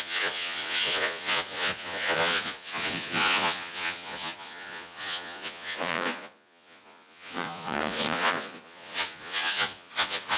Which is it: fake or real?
fake